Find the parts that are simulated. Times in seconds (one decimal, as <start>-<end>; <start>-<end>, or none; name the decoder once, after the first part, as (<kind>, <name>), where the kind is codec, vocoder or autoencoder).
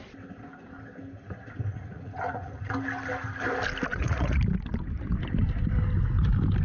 1.7-2.7 (vocoder, Vocos); 3.9-4.4